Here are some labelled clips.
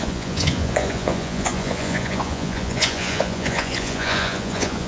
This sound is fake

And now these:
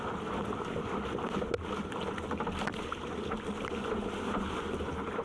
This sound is real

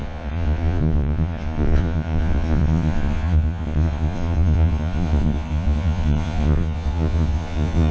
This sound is fake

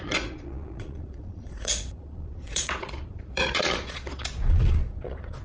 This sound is fake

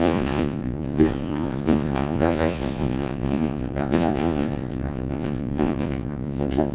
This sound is fake